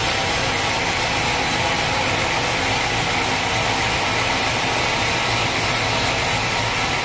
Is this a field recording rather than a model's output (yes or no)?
yes